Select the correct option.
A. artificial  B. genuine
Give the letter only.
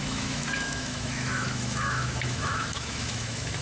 A